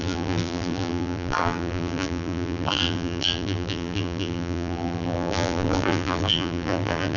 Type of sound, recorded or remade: remade